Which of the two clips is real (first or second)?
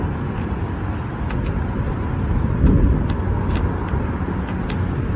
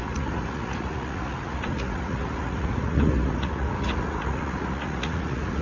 first